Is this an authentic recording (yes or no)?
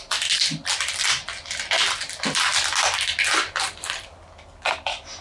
yes